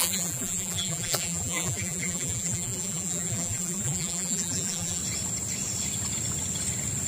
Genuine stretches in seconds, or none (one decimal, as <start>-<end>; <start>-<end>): 5.0-7.1